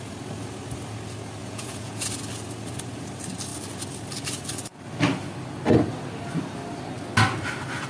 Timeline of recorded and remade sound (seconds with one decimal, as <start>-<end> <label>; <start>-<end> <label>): 0.0-1.4 recorded; 1.4-2.1 remade; 2.1-7.9 recorded